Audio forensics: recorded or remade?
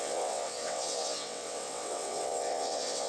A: remade